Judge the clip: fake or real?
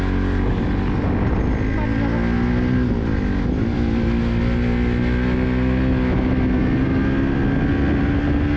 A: real